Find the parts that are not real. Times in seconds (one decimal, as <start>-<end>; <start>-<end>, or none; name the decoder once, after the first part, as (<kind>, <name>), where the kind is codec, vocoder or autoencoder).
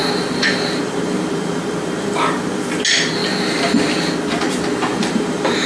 0.0-2.8 (vocoder, BigVGAN v2); 4.9-5.7